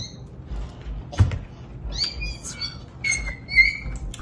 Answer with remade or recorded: recorded